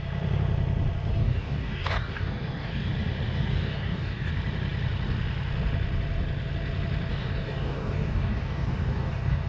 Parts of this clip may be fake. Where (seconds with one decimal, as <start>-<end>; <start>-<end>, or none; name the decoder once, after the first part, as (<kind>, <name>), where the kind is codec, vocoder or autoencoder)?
1.2-2.9 (codec, DAC); 3.3-4.3; 7.1-9.5